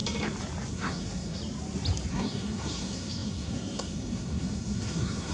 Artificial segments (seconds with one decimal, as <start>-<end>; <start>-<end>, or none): 0.7-1.4; 2.1-5.3